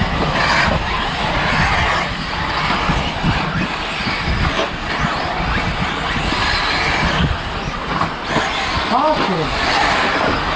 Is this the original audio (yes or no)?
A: yes